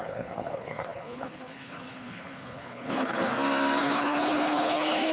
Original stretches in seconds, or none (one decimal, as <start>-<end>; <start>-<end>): 3.3-3.8